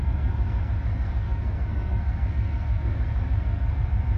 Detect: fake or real fake